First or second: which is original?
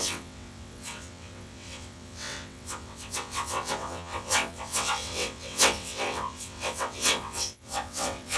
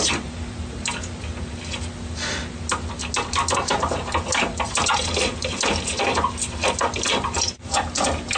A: second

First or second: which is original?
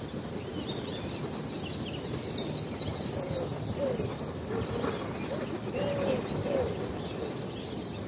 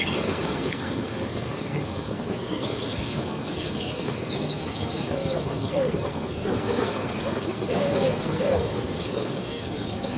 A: first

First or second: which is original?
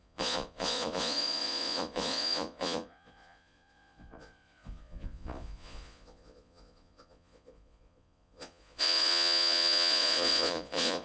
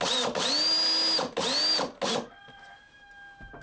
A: second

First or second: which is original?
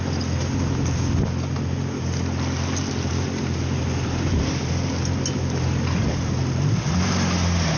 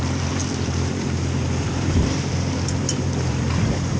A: first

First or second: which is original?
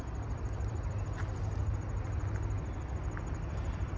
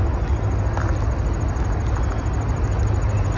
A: second